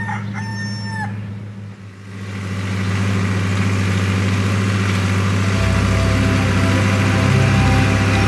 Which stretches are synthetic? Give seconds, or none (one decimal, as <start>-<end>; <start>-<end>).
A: none